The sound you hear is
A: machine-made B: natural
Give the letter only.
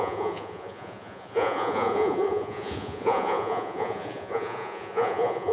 A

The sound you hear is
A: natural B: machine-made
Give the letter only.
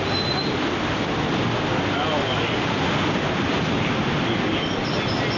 A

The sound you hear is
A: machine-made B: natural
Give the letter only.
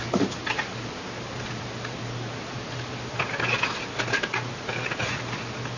B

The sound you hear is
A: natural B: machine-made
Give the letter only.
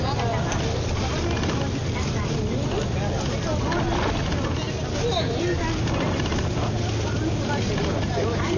A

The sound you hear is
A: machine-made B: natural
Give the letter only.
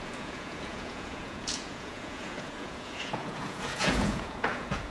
A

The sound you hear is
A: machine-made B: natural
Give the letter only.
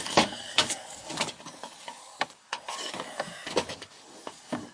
A